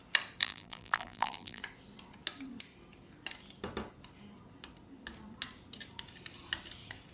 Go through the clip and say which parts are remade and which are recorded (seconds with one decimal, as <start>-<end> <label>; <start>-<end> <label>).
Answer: 0.0-0.4 recorded; 0.4-1.6 remade; 1.6-7.1 recorded